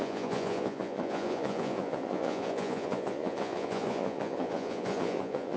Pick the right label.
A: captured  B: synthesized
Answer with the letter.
B